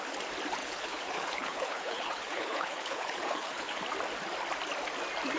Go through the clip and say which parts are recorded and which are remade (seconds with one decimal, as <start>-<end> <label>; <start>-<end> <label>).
0.0-0.6 recorded; 0.6-3.8 remade; 3.8-5.4 recorded